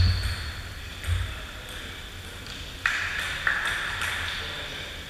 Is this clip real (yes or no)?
yes